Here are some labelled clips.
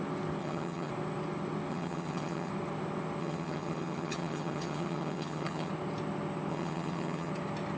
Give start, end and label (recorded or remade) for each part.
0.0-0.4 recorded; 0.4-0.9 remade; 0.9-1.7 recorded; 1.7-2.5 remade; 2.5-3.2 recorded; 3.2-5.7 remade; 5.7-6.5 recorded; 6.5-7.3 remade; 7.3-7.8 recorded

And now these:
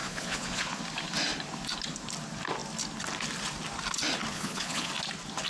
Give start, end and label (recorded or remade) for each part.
0.0-0.8 remade; 0.8-4.3 recorded; 4.3-4.9 remade; 4.9-5.5 recorded

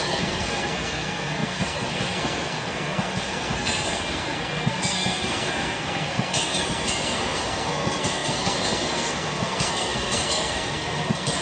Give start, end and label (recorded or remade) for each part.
0.0-11.4 remade